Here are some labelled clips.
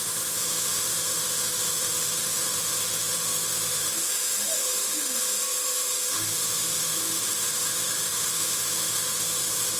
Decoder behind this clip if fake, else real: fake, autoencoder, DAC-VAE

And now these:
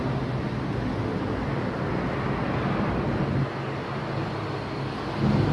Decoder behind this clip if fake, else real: real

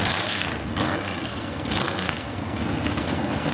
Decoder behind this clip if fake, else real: fake, codec, SNAC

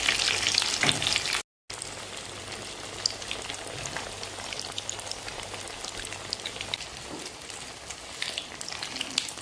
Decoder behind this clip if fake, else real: real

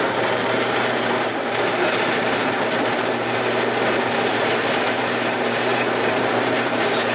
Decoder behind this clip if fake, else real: fake, vocoder, BigVGAN v2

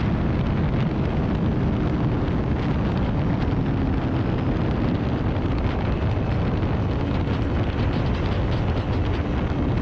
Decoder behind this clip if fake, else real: real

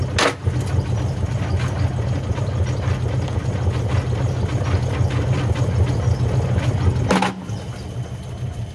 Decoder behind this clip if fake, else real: real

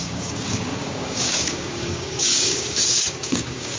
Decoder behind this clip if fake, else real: fake, codec, DAC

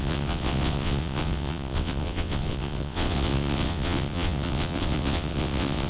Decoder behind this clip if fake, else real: fake, vocoder, WaveNeXt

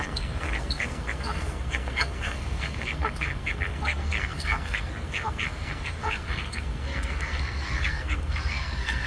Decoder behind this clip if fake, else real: fake, codec, SNAC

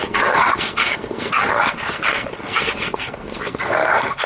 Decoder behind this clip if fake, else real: fake, codec, SNAC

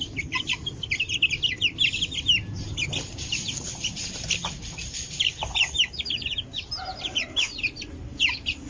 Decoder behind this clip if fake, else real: real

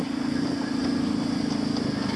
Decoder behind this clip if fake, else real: real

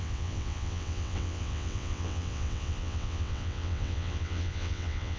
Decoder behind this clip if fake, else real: fake, vocoder, WaveNeXt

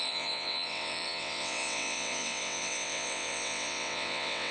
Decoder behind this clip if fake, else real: fake, vocoder, WaveNeXt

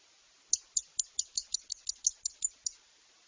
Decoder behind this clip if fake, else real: real